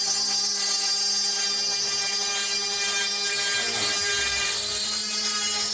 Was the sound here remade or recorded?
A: recorded